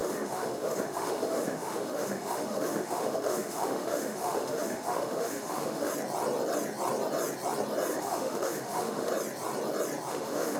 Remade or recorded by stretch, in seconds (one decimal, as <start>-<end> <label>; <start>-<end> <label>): 0.0-5.9 remade; 5.9-7.9 recorded; 7.9-9.1 remade; 9.1-10.1 recorded; 10.1-10.6 remade